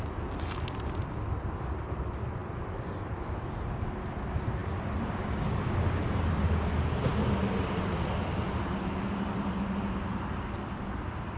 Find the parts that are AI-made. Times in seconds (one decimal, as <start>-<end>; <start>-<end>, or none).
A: 2.4-3.6; 4.6-6.0